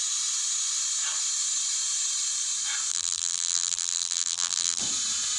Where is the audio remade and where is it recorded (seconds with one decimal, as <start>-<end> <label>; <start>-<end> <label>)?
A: 0.0-2.9 recorded; 2.9-4.8 remade; 4.8-5.4 recorded